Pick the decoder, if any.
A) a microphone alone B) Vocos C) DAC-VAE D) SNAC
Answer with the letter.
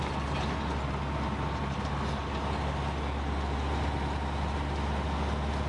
A